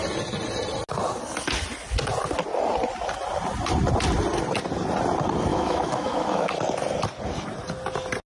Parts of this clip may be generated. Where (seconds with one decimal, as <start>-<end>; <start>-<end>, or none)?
5.5-6.5